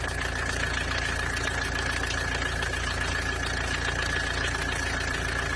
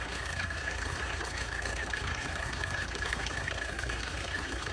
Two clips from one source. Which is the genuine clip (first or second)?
first